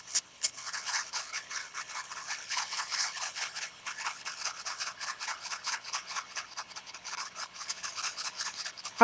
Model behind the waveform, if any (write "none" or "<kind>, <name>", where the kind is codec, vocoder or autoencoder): codec, HILCodec